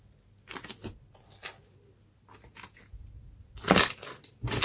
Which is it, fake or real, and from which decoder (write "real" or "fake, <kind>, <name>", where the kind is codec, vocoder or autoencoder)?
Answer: real